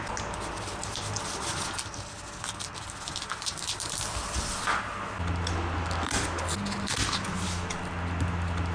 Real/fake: real